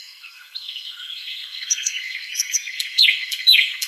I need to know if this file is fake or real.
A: fake